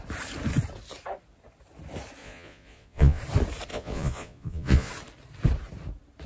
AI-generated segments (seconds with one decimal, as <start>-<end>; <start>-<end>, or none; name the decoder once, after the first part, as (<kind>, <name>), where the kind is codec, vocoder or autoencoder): 2.2-3.2 (vocoder, Vocos); 3.7-4.9